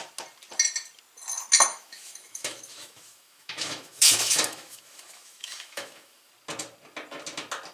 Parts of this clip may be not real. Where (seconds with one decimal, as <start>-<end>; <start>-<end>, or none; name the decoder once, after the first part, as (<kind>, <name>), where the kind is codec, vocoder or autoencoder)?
1.7-6.3 (autoencoder, DAC-VAE)